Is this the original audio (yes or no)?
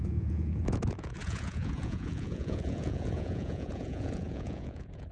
no